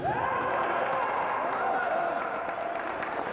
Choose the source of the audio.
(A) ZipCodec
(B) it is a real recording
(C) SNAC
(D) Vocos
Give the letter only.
B